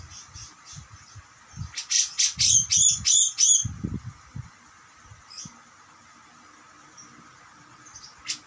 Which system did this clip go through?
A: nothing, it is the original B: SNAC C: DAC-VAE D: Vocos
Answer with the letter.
A